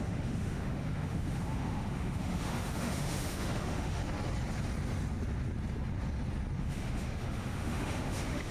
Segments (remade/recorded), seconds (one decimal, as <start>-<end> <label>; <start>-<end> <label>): 0.0-4.0 remade; 4.0-6.6 recorded; 6.6-8.5 remade